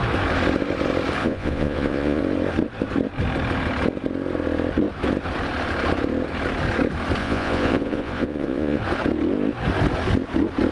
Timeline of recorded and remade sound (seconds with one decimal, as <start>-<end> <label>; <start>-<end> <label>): 0.0-1.2 recorded; 1.2-2.2 remade; 2.2-7.2 recorded; 7.2-8.8 remade; 8.8-10.7 recorded